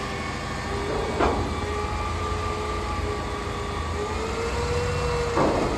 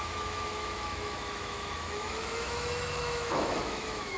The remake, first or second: second